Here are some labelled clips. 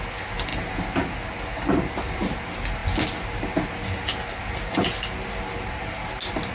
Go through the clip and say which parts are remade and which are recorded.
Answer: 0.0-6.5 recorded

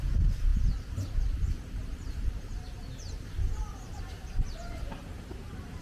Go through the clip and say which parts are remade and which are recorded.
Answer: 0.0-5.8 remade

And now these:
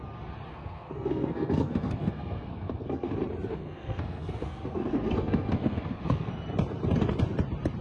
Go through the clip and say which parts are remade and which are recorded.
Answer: 0.0-0.5 recorded; 0.5-3.1 remade; 3.1-3.5 recorded; 3.5-6.3 remade; 6.3-7.8 recorded